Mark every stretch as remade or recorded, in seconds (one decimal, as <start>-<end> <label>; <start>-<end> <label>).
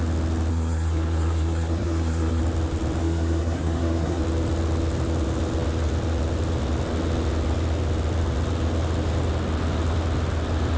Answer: 0.0-0.5 recorded; 0.5-2.4 remade; 2.4-3.0 recorded; 3.0-4.2 remade; 4.2-10.8 recorded